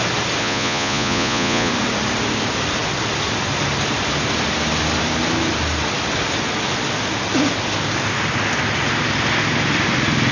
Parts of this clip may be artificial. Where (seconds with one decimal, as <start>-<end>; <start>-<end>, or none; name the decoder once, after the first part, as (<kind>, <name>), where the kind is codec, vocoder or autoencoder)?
0.4-1.7 (vocoder, Vocos)